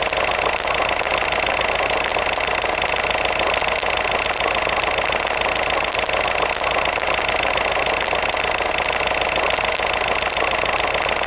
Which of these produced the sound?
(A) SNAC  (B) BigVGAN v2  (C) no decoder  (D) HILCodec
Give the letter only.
C